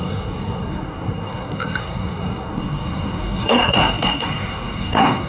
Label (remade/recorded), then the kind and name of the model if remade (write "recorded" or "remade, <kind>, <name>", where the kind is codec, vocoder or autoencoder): remade, codec, SNAC